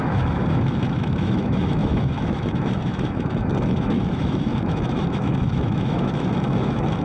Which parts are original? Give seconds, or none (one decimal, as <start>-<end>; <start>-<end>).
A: none